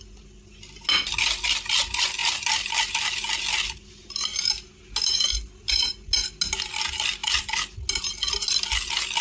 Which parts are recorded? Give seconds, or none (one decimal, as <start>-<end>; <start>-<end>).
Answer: 0.0-9.2